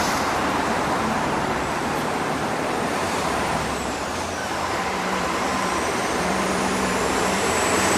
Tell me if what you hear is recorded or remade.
remade